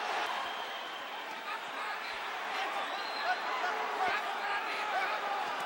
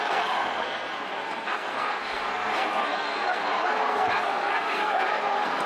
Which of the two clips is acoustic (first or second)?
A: first